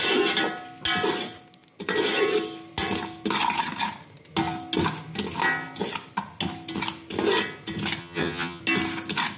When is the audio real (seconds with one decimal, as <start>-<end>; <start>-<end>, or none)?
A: 0.0-8.0; 8.6-9.4